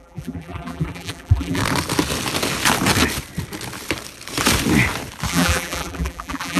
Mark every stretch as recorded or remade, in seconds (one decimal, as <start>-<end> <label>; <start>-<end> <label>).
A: 0.0-1.6 remade; 1.6-5.3 recorded; 5.3-6.6 remade